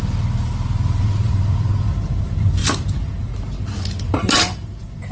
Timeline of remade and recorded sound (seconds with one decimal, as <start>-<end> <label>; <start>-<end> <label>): 0.0-5.1 remade